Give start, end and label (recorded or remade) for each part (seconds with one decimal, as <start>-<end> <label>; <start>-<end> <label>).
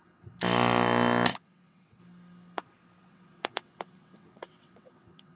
0.0-1.3 recorded; 1.3-2.0 remade; 2.0-3.0 recorded; 3.0-5.4 remade